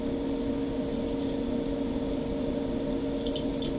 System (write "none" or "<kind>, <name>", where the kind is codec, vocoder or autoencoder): none